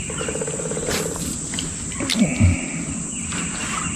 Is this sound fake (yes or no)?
no